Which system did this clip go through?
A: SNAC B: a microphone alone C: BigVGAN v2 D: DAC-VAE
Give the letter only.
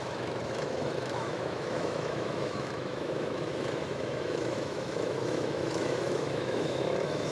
D